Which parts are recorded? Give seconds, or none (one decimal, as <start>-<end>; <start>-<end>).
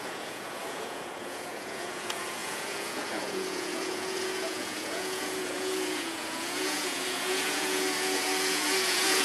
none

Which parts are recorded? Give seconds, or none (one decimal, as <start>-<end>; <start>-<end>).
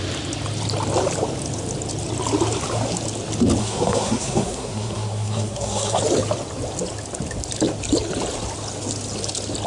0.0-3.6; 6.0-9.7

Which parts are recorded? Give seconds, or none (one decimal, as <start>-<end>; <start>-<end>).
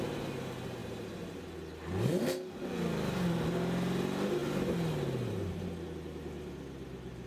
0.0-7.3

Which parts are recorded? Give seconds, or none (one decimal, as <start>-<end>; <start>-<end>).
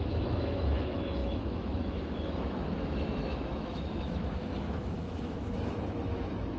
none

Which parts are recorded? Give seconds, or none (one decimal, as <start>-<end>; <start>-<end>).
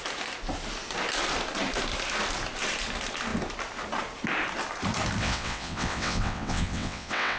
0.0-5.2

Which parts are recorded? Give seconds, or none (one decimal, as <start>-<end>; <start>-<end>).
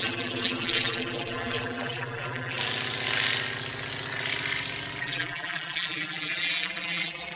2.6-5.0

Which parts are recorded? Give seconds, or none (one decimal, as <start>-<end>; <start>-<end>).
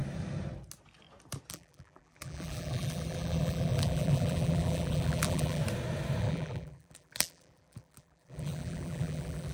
0.0-1.5; 5.6-6.2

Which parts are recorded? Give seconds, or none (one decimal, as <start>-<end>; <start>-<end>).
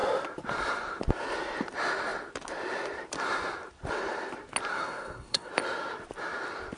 0.0-4.7; 5.5-6.8